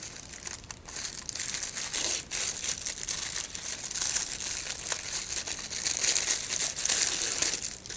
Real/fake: real